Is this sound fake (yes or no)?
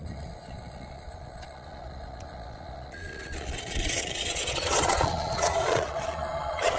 yes